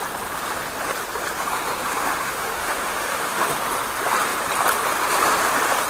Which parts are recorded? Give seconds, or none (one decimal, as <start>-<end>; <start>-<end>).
0.0-2.0; 3.5-5.9